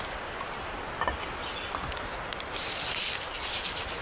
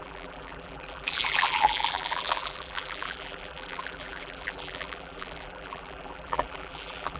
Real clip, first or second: first